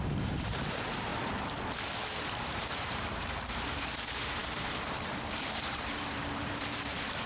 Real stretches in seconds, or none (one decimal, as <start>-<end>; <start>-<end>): 1.1-2.3